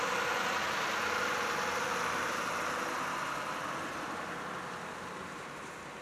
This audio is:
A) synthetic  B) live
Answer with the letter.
B